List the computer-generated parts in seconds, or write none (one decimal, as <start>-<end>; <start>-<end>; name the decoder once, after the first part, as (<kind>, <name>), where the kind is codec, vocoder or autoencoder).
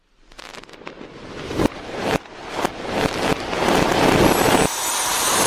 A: none